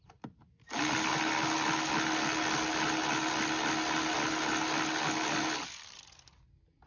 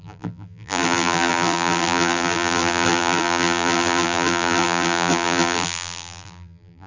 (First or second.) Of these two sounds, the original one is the first